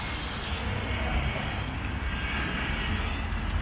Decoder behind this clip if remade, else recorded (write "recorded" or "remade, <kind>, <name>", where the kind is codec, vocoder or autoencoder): recorded